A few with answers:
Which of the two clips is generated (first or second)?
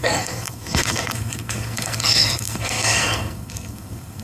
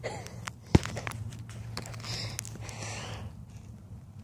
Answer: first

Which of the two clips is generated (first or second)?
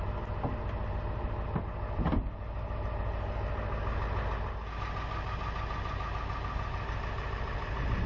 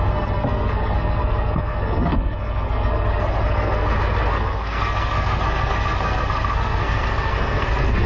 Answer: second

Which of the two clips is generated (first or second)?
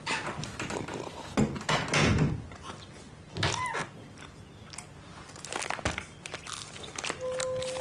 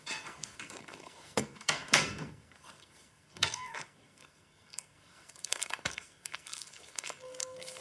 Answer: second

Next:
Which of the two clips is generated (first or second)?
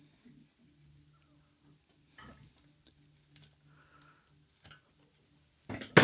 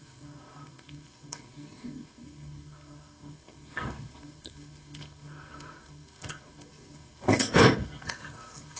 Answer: second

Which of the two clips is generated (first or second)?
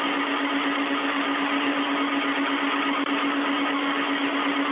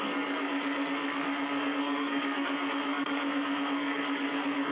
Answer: second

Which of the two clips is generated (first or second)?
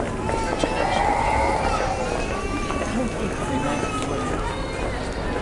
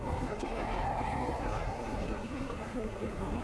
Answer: second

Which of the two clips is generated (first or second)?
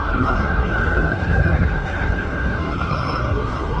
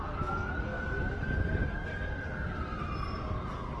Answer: first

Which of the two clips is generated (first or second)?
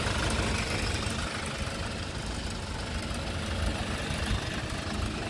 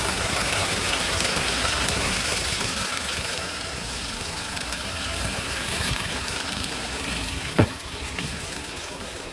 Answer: second